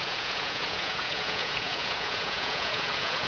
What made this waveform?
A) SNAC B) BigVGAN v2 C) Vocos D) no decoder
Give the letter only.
C